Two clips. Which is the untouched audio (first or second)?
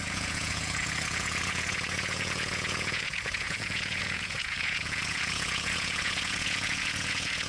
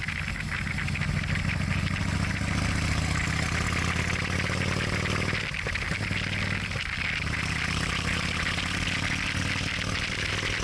second